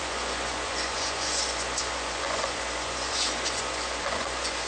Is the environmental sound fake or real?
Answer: fake